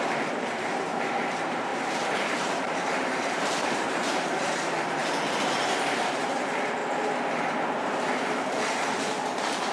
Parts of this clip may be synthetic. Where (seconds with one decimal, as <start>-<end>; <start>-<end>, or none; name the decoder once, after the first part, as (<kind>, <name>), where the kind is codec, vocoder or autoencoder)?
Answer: 0.0-6.8 (vocoder, BigVGAN v2); 7.6-9.7